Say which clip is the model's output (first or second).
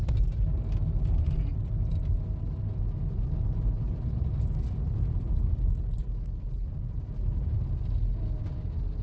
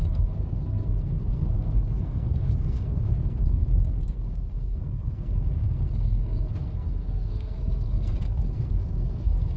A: second